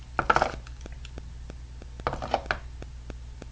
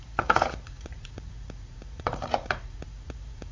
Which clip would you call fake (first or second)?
second